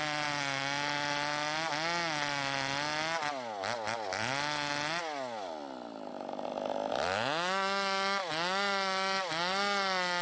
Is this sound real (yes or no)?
yes